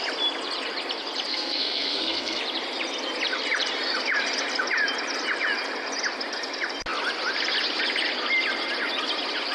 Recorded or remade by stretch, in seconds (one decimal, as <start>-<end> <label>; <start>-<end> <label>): 0.0-1.3 recorded; 1.3-2.4 remade; 2.4-9.5 recorded